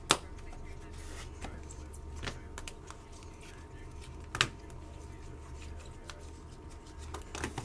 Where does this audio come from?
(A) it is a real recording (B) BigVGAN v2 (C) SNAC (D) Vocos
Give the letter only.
A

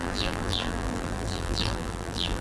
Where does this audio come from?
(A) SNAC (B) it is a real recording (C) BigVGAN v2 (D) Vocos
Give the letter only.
C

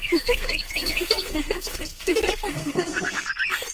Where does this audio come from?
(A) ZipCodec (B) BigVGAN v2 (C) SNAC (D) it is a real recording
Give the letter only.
C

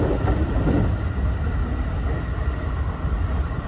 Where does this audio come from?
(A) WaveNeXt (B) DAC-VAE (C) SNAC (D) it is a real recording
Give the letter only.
D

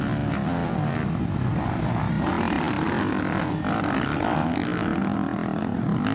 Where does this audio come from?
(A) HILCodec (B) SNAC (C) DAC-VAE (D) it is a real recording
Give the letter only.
D